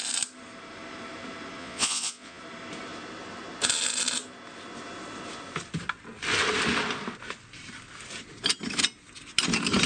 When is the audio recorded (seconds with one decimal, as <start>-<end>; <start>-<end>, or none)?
0.0-1.6; 2.4-9.9